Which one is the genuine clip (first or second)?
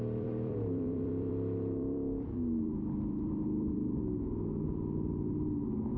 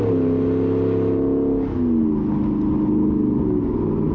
second